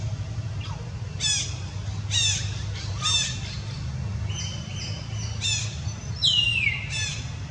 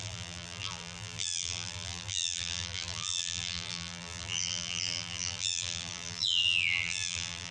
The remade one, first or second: second